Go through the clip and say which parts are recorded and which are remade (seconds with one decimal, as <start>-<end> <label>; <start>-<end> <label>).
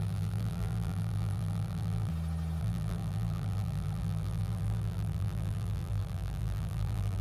0.0-2.1 remade; 2.1-2.6 recorded; 2.6-7.2 remade